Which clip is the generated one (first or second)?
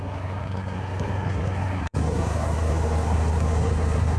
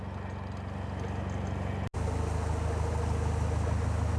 first